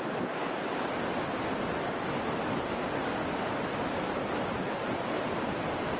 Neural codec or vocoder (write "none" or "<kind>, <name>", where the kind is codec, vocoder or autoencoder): none